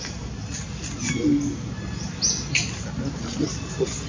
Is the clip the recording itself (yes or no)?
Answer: yes